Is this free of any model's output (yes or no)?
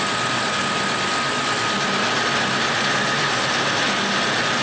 yes